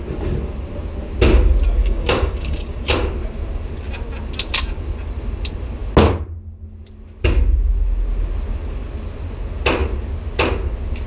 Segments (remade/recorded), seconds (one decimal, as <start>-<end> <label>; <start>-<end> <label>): 0.0-1.8 recorded; 1.8-2.8 remade; 2.8-11.1 recorded